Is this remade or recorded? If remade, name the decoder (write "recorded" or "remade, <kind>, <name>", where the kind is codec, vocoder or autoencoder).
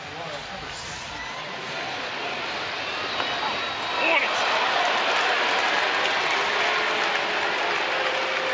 recorded